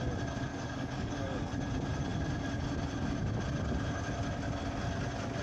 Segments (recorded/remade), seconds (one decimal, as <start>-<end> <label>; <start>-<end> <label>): 0.0-0.5 recorded; 0.5-1.4 remade; 1.4-5.4 recorded